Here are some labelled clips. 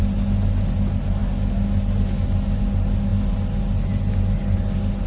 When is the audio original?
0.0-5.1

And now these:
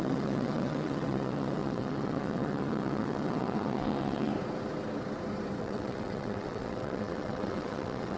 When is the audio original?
4.3-5.6

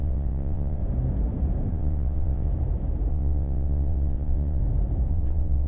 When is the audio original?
0.8-1.7; 2.5-3.1; 4.6-5.1

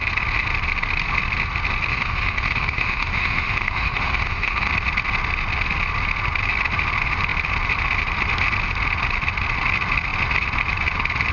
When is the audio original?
0.0-1.9; 4.7-11.3

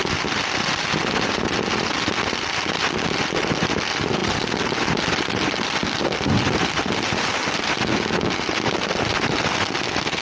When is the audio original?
0.0-10.2

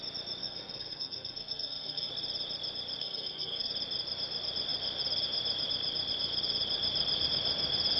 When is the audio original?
0.0-0.4; 2.1-3.0; 3.7-8.0